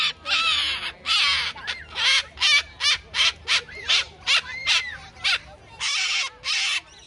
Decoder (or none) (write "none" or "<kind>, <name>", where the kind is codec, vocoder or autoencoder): none